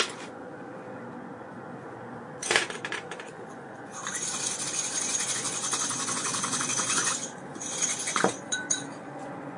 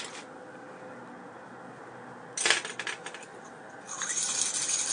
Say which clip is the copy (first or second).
first